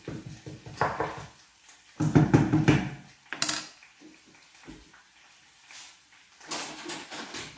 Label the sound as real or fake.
real